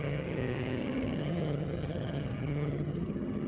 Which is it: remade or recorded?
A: remade